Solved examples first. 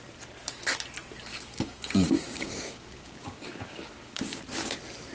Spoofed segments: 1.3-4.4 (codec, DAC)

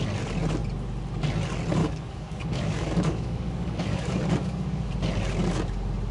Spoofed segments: 1.8-4.9 (codec, DAC)

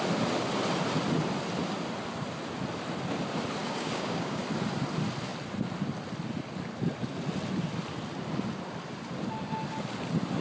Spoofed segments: 3.6-4.4 (codec, DAC)

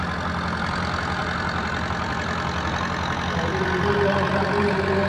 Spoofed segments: none